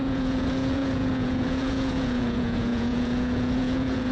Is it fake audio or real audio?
fake